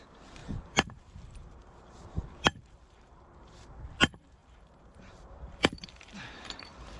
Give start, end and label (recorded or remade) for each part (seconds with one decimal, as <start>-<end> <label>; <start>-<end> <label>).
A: 0.0-0.4 recorded; 0.4-3.8 remade; 3.8-4.4 recorded; 4.4-7.0 remade